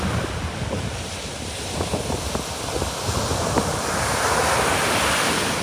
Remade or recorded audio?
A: recorded